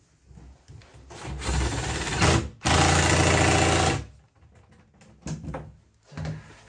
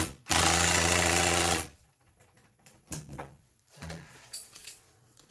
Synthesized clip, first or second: second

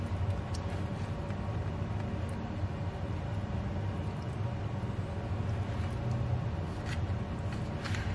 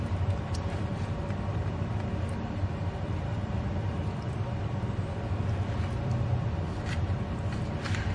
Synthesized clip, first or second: second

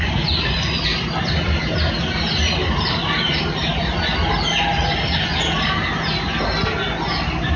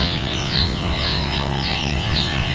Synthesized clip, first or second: second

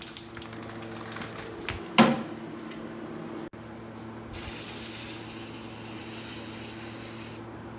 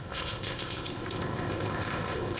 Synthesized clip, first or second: second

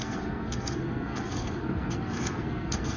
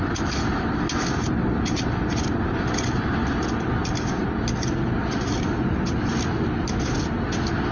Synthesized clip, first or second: first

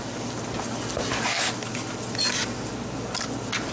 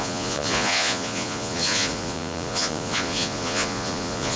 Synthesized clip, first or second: second